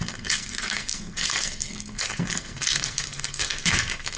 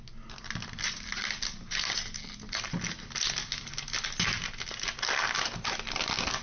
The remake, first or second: first